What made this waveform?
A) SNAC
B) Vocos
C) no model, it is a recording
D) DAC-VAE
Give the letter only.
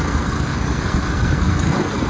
A